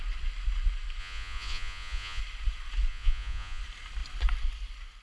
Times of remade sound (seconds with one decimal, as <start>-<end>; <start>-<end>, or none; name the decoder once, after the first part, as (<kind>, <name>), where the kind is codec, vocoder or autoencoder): 1.0-2.2 (vocoder, Vocos); 2.9-3.6